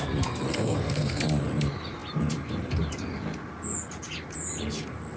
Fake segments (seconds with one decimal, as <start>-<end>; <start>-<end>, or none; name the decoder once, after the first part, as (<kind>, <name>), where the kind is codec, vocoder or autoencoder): 0.5-1.2 (codec, SNAC)

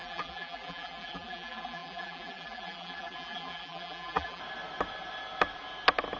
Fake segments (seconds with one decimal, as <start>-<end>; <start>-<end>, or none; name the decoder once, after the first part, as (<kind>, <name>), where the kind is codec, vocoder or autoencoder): 0.0-4.4 (vocoder, BigVGAN v2)

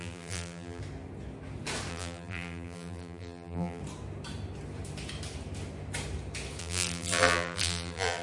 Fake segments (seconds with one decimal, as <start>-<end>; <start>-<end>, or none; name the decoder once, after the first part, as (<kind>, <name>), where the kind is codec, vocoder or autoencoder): 0.0-0.8 (vocoder, BigVGAN v2); 1.9-3.8; 6.6-8.2

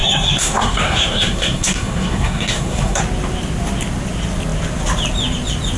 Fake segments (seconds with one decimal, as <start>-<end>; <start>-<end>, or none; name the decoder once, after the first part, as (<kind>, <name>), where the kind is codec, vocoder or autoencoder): 0.0-3.0 (codec, SNAC)

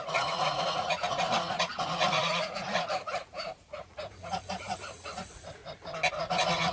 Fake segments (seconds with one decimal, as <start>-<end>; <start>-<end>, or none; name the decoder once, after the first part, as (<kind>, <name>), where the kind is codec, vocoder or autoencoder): 0.0-5.6 (vocoder, Vocos); 6.1-6.7

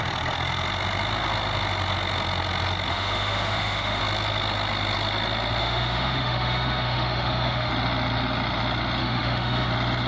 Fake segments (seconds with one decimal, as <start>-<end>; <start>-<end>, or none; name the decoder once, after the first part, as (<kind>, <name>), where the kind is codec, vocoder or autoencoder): 2.9-4.0 (autoencoder, DAC-VAE); 5.6-7.7; 9.0-9.7

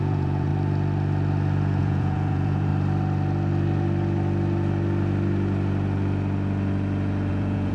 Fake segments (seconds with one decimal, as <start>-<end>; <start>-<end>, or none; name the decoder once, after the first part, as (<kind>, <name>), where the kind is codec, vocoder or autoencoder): 0.0-0.5 (vocoder, Vocos); 1.8-2.7; 7.3-7.7